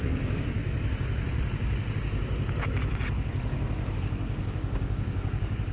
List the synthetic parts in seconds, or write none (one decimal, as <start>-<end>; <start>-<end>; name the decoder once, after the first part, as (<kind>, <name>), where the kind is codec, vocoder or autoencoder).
0.0-0.6 (codec, DAC); 4.0-5.7